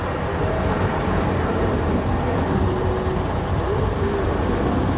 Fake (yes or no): no